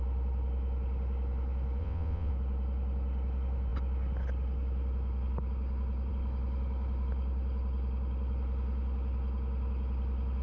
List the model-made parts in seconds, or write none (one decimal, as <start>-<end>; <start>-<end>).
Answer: 1.8-2.3